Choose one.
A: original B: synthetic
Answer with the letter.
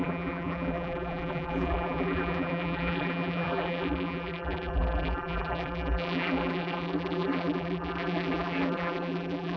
B